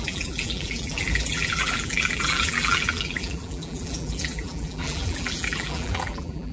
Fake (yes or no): yes